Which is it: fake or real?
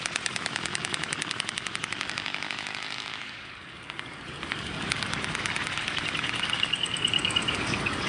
fake